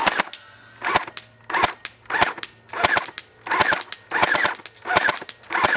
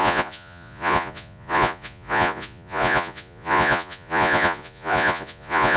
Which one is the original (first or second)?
first